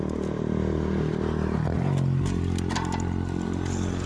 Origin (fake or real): real